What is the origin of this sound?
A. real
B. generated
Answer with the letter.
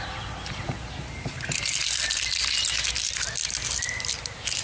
A